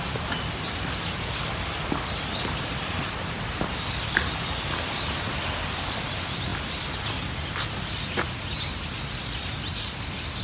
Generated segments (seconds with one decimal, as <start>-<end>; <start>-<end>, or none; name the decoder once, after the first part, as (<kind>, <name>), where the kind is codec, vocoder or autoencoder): none